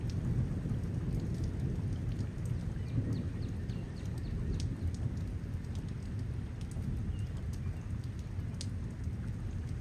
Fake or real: real